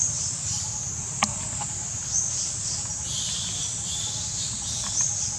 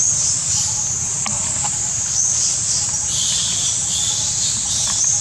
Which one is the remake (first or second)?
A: second